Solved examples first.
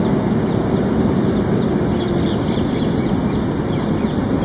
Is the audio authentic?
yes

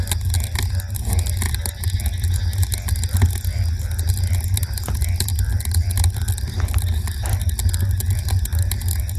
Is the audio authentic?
yes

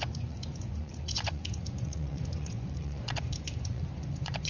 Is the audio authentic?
no